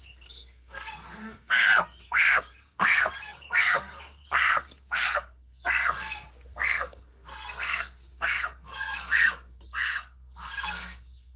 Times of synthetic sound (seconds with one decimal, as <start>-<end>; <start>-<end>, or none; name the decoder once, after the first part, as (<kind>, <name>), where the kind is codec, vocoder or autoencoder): 0.0-11.4 (codec, SNAC)